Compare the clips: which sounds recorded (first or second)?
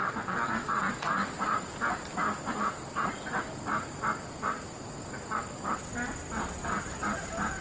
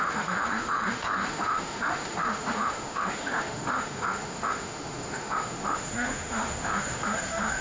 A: first